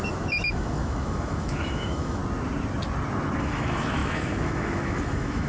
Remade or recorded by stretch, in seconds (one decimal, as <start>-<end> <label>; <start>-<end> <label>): 0.0-2.2 remade; 2.2-3.4 recorded; 3.4-5.5 remade